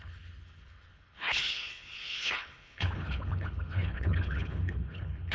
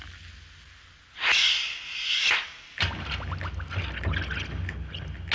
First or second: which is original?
second